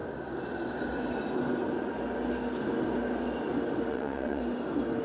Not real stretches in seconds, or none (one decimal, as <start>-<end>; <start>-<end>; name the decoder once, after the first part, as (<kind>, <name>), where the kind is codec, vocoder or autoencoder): 3.9-4.4 (vocoder, WaveNeXt)